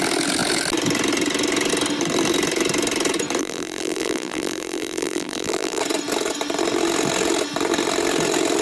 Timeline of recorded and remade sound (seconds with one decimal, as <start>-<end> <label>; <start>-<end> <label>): 0.0-3.4 recorded; 3.4-5.8 remade; 5.8-8.6 recorded